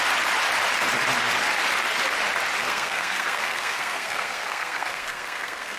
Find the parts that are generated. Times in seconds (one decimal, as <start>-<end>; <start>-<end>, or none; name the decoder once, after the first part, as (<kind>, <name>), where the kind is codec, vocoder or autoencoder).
2.6-5.8 (codec, SNAC)

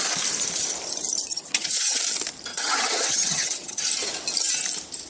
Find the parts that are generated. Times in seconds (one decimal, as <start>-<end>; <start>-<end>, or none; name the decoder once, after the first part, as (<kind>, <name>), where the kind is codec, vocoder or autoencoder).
1.3-2.0 (vocoder, HiFi-GAN); 2.5-3.8

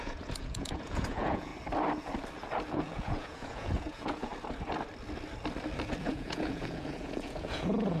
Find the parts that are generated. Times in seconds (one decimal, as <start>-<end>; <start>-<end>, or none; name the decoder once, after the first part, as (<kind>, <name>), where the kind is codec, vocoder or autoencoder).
0.0-1.5 (vocoder, Vocos); 2.7-4.3; 6.0-8.0

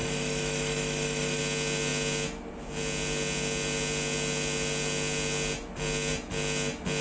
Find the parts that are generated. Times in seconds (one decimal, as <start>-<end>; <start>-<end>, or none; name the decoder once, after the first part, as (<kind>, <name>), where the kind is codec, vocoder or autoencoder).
0.0-1.4 (autoencoder, DAC-VAE)

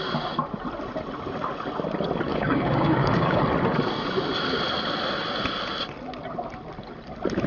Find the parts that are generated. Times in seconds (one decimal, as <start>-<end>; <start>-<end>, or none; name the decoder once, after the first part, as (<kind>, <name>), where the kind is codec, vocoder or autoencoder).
2.3-3.4 (codec, DAC)